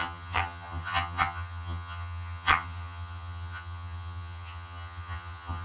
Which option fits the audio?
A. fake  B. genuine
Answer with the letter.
A